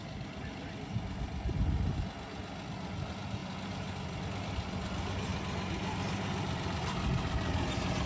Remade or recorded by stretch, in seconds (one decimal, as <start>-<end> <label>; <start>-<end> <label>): 0.0-1.9 remade; 1.9-5.3 recorded; 5.3-7.5 remade; 7.5-8.1 recorded